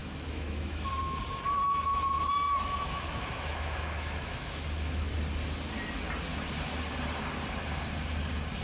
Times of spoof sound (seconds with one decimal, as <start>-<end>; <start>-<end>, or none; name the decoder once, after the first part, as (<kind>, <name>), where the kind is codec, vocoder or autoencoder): 0.0-0.9 (autoencoder, DAC-VAE); 1.6-5.1